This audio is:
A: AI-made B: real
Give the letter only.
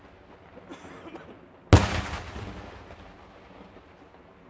B